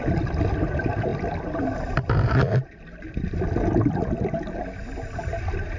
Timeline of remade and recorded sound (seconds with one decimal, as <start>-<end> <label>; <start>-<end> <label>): 0.0-5.8 recorded